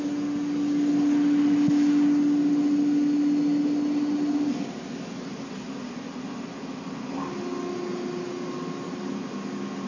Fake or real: real